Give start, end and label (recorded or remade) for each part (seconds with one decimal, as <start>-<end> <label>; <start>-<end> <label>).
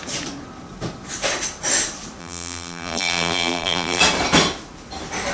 0.0-2.2 recorded; 2.2-4.0 remade; 4.0-5.3 recorded